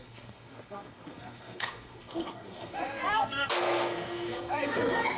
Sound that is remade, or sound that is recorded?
remade